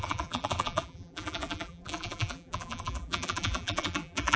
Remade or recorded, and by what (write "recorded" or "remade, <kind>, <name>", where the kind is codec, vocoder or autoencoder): remade, vocoder, BigVGAN v2